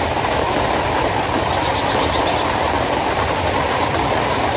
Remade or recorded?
remade